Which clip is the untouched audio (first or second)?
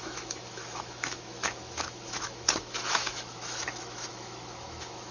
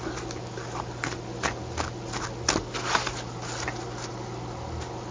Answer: second